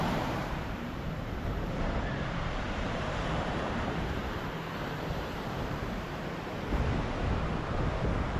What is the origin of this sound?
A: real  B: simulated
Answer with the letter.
B